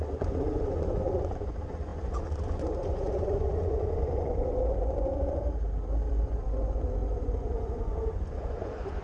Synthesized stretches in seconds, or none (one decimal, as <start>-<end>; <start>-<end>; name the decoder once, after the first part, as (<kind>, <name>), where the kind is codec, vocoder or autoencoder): 0.0-5.4 (vocoder, Vocos); 6.1-9.0